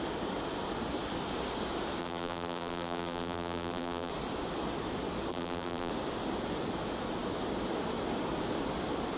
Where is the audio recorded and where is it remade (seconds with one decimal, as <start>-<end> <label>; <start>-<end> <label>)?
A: 0.0-2.0 recorded; 2.0-4.1 remade; 4.1-5.3 recorded; 5.3-5.9 remade; 5.9-9.2 recorded